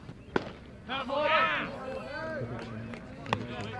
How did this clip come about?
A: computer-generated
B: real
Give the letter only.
B